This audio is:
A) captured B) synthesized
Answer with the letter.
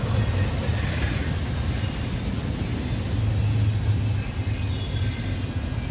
A